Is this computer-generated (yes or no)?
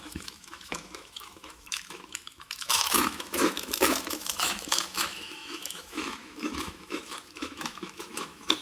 yes